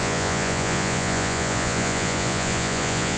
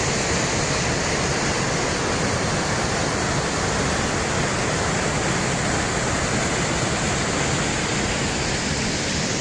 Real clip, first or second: second